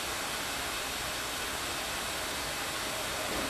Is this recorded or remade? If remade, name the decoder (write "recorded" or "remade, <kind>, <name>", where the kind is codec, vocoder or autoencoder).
recorded